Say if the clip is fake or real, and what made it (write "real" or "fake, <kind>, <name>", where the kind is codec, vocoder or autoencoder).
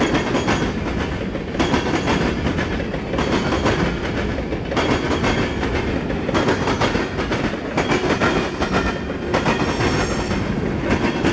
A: real